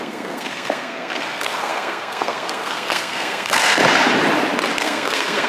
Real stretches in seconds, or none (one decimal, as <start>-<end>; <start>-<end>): 3.8-4.8